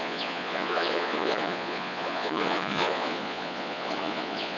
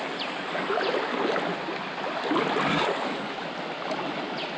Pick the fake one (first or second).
first